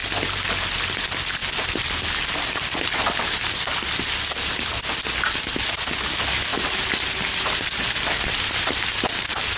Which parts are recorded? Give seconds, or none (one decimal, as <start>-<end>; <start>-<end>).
0.0-9.6